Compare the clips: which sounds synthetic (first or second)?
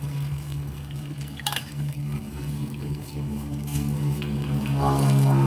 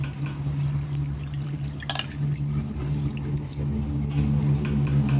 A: first